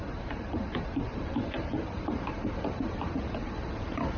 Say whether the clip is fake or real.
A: fake